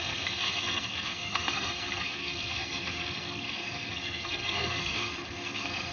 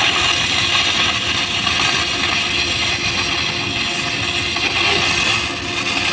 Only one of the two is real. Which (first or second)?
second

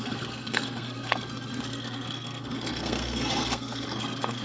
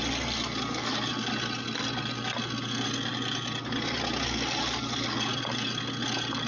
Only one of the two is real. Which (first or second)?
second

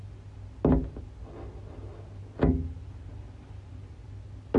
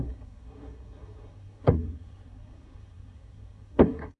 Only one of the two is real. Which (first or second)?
first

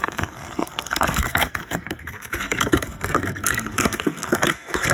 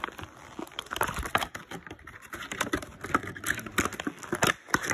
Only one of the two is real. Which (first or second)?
second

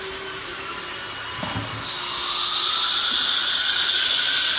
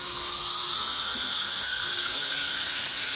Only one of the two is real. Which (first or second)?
first